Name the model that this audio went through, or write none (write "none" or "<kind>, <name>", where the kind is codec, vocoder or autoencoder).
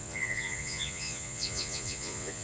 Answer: vocoder, Vocos